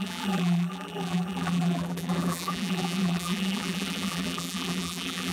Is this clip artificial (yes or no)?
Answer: yes